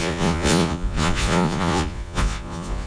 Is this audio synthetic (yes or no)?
yes